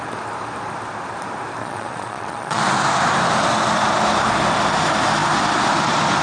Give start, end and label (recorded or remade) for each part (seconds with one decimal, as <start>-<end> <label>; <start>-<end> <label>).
0.0-1.6 recorded; 1.6-2.6 remade; 2.6-6.2 recorded